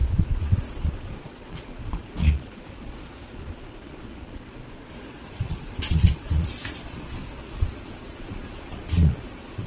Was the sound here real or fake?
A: fake